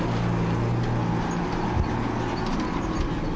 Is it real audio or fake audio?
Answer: real